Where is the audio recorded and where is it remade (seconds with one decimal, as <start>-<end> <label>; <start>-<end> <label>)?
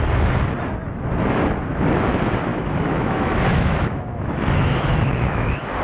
0.0-2.5 recorded; 2.5-5.8 remade